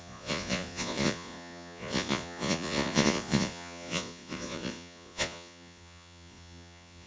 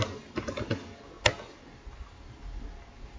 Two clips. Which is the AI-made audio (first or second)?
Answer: first